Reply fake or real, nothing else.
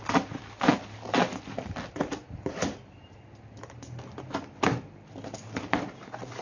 real